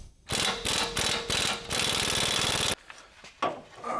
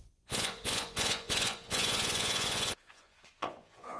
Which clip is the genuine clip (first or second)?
first